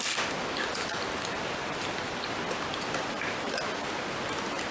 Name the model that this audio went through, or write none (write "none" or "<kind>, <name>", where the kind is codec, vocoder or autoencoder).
none